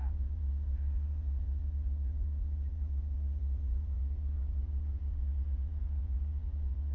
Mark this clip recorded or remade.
remade